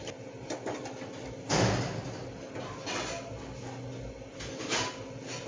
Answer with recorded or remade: recorded